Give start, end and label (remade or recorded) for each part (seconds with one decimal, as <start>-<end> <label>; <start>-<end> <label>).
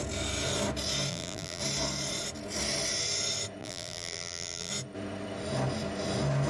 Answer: 0.0-1.1 recorded; 1.1-1.6 remade; 1.6-3.6 recorded; 3.6-4.7 remade; 4.7-6.5 recorded